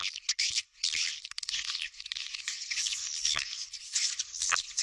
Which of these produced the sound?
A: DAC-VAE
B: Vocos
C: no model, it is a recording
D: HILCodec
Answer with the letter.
D